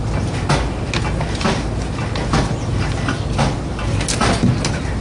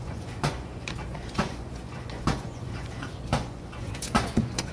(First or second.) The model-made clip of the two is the second